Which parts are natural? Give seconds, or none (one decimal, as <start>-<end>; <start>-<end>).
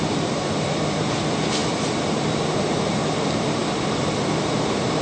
3.6-4.6